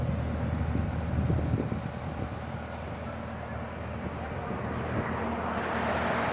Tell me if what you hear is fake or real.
real